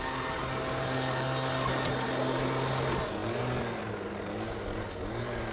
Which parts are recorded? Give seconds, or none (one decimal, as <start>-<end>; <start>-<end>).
0.0-5.5